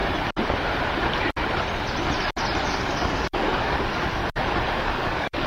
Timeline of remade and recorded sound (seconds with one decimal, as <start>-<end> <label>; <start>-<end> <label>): 0.0-2.7 recorded; 2.7-4.2 remade; 4.2-4.8 recorded; 4.8-5.5 remade